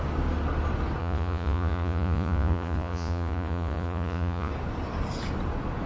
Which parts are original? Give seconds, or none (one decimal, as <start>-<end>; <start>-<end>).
0.0-1.0; 4.5-5.9